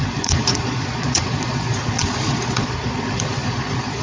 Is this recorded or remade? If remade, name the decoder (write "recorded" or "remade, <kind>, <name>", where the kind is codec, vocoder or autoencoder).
remade, vocoder, Vocos